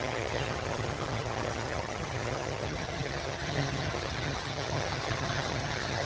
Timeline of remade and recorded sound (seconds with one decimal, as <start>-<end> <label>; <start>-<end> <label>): 0.0-6.1 remade